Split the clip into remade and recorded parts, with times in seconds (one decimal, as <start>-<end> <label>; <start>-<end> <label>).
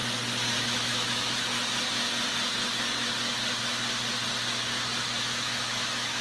0.0-0.6 recorded; 0.6-1.5 remade; 1.5-5.2 recorded; 5.2-6.2 remade